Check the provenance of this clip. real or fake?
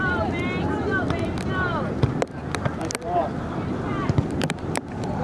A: fake